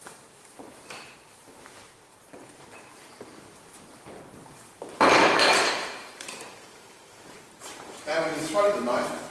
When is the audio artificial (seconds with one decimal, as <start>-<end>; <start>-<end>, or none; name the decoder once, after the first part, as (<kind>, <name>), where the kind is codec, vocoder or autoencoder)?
0.0-3.7 (vocoder, BigVGAN v2); 5.7-9.3